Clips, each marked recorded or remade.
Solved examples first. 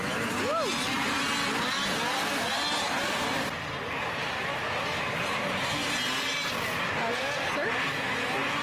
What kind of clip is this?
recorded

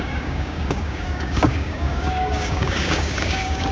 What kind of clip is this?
remade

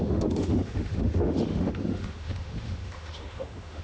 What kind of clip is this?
remade